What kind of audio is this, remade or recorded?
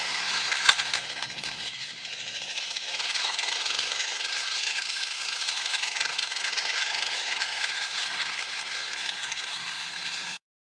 remade